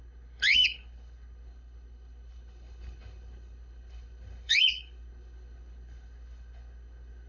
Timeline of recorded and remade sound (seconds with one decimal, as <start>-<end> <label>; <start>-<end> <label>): 0.0-7.3 remade